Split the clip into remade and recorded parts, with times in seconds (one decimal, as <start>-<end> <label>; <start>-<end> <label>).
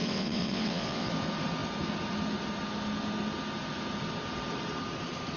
0.0-1.1 remade; 1.1-5.4 recorded